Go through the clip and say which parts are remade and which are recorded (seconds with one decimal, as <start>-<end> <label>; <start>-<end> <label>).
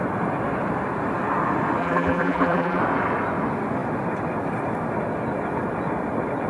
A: 0.0-1.8 recorded; 1.8-2.8 remade; 2.8-6.5 recorded